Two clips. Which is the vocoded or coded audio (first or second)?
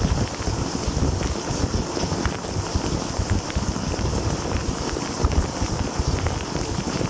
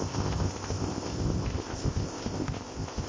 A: second